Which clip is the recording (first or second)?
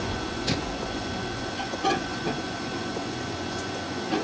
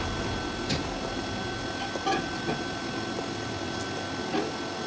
second